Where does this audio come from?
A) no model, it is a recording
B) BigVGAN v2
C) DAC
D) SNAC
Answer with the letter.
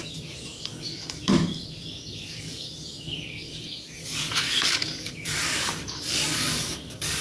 C